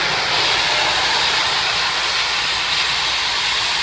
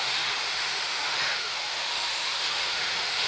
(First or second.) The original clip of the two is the first